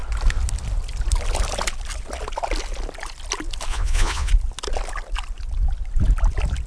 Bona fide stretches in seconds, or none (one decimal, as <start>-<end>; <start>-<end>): 0.0-3.7; 4.3-6.7